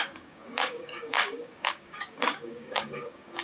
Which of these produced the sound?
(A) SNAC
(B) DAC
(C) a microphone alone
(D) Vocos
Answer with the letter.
B